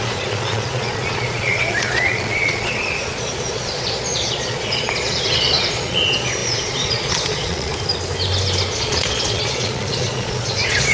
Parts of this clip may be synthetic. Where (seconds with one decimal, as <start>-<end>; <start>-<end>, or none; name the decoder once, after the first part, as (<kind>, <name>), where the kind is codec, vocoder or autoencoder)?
0.0-7.7 (vocoder, Vocos); 8.7-10.9